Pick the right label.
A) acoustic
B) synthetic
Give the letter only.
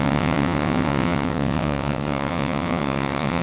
B